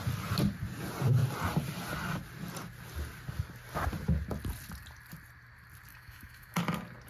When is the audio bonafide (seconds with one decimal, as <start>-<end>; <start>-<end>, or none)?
0.0-5.9; 6.6-7.1